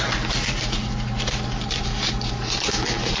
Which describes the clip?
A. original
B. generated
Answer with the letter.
A